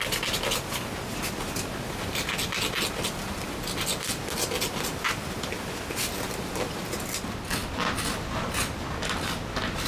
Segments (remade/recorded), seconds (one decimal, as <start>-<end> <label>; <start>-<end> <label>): 0.0-9.9 recorded